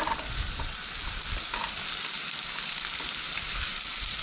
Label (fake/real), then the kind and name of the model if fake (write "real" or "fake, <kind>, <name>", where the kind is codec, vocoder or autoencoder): real